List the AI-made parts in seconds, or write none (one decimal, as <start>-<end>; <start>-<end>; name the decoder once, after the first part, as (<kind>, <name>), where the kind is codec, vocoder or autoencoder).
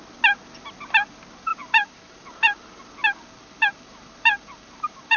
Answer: 1.5-2.8 (vocoder, BigVGAN v2); 3.4-5.2